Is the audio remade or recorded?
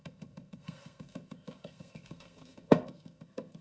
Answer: remade